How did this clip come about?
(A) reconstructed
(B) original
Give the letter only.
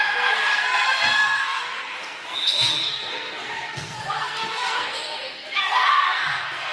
A